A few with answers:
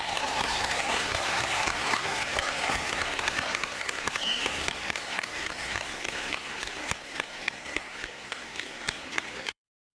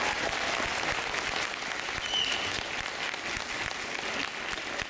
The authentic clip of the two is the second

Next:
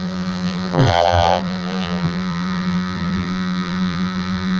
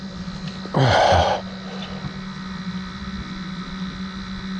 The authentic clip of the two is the second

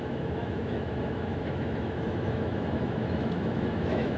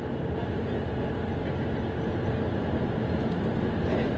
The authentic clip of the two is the second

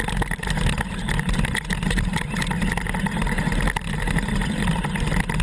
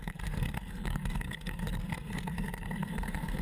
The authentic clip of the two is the first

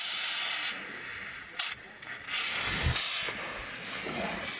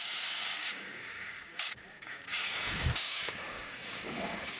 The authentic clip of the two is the first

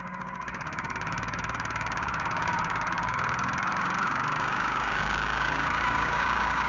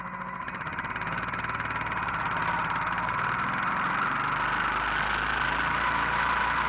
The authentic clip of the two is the second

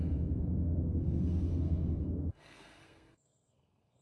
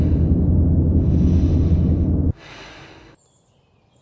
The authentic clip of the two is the second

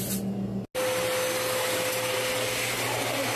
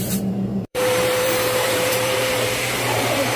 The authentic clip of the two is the first